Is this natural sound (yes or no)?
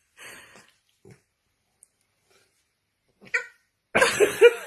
yes